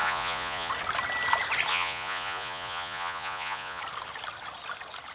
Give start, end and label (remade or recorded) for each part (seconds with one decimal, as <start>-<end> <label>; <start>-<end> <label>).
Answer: 0.0-0.7 remade; 0.7-1.7 recorded; 1.7-3.8 remade; 3.8-5.1 recorded